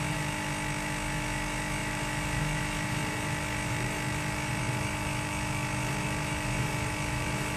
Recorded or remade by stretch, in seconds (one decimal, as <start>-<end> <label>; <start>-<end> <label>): 0.0-7.6 remade